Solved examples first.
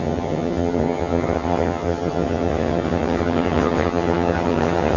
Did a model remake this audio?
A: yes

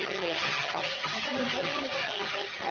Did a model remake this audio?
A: yes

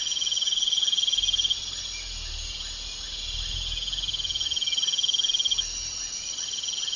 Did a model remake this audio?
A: no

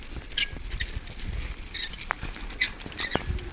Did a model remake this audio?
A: no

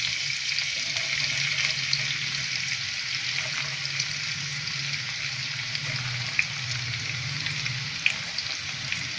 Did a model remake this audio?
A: no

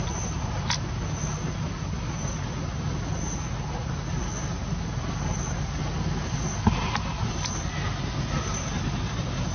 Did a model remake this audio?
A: no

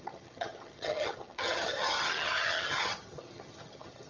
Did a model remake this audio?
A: yes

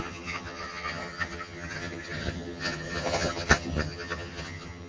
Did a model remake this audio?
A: yes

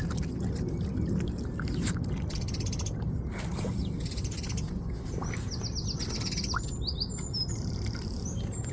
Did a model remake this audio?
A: no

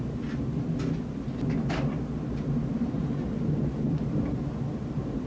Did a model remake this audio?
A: no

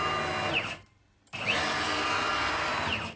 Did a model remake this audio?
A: no